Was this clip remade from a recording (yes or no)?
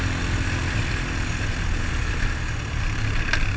no